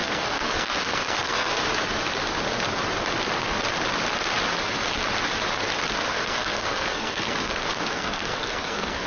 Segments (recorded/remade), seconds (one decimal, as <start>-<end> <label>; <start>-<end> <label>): 0.0-1.6 remade; 1.6-6.1 recorded; 6.1-9.1 remade